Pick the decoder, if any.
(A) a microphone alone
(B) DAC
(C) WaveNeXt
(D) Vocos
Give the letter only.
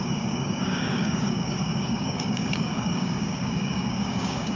B